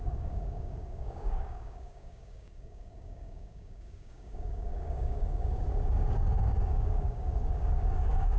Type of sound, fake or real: fake